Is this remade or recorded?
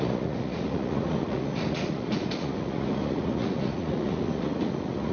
remade